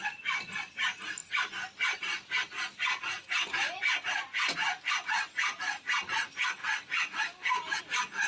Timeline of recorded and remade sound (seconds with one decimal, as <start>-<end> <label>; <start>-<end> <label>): 0.0-8.3 recorded